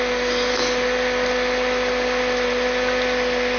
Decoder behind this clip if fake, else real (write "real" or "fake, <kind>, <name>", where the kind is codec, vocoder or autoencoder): real